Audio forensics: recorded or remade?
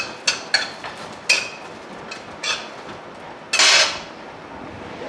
recorded